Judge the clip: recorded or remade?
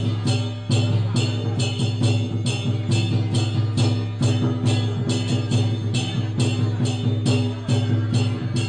recorded